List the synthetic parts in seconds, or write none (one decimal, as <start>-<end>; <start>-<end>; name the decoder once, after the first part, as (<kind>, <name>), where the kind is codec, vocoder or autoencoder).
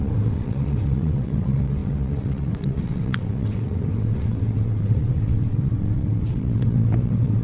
0.0-7.4 (vocoder, WaveNeXt)